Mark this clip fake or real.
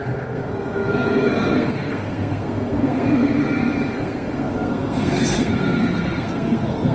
fake